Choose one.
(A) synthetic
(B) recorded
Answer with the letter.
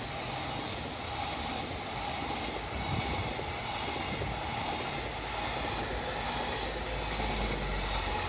B